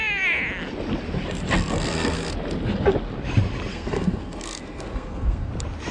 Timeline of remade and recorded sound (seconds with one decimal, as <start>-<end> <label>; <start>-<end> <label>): 0.0-1.7 recorded; 1.7-2.3 remade; 2.3-3.7 recorded; 3.7-5.5 remade; 5.5-5.9 recorded